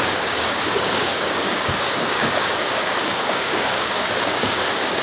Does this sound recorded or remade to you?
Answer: remade